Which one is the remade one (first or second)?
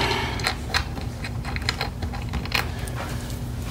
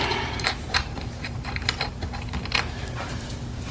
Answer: second